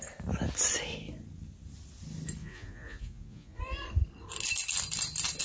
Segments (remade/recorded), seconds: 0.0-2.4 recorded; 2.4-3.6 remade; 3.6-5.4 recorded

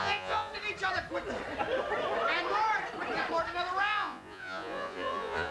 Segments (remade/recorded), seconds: 0.0-0.5 remade; 0.5-3.8 recorded; 3.8-5.5 remade